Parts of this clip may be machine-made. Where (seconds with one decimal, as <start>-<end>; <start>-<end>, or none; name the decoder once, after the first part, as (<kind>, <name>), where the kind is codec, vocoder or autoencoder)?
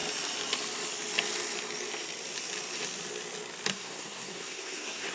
3.7-5.1 (codec, SNAC)